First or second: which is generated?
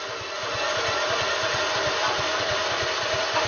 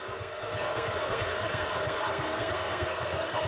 second